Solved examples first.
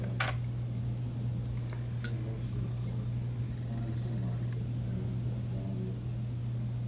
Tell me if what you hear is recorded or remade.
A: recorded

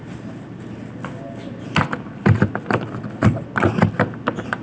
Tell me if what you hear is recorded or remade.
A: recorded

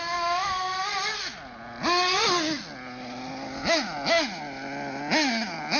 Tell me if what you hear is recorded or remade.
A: recorded